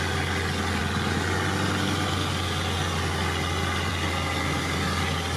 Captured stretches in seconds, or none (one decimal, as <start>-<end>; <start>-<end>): 0.0-5.4